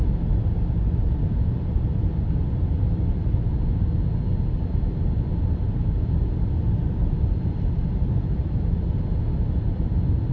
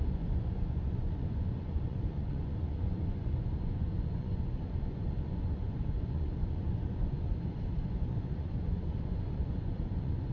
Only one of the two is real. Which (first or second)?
first